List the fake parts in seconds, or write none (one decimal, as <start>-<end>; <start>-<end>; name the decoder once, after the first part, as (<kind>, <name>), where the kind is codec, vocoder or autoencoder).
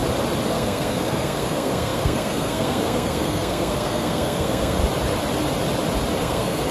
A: 0.5-4.8 (codec, SNAC); 6.2-6.7